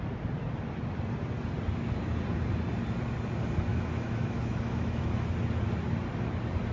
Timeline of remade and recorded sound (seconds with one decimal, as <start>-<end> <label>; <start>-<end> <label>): 0.0-3.7 recorded; 3.7-5.3 remade; 5.3-6.7 recorded

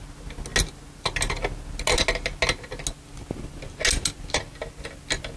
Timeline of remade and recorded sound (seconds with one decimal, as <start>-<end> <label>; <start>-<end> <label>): 0.0-5.4 recorded

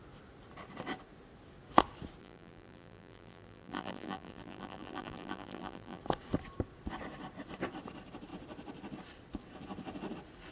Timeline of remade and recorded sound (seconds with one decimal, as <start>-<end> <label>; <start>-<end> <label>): 0.0-2.2 recorded; 2.2-6.0 remade; 6.0-10.5 recorded

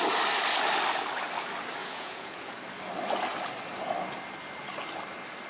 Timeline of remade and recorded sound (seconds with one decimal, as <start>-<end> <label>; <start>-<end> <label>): 0.0-1.8 recorded; 1.8-2.6 remade; 2.6-5.5 recorded

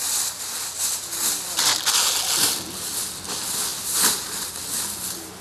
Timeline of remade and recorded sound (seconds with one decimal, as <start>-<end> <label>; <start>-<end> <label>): 0.0-3.7 recorded; 3.7-4.5 remade; 4.5-5.4 recorded